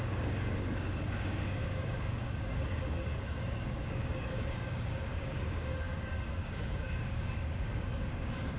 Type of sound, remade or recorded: remade